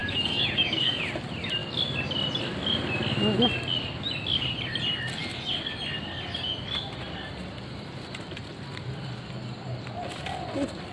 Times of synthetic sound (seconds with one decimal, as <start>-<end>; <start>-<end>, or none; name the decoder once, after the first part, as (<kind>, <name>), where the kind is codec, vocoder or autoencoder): 0.0-1.0 (autoencoder, DAC-VAE)